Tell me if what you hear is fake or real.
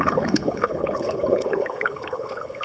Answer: fake